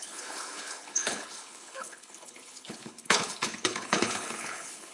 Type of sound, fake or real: fake